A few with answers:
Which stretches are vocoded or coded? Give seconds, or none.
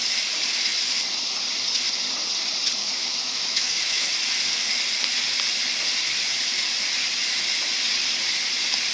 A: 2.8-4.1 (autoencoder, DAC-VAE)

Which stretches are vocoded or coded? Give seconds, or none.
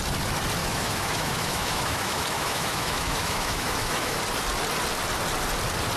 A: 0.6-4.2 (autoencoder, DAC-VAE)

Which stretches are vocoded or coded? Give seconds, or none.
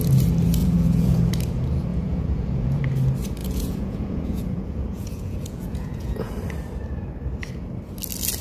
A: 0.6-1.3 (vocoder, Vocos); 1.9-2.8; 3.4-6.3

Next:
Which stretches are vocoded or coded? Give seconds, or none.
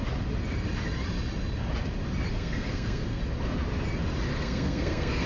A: 2.3-3.2 (codec, SNAC); 4.3-5.3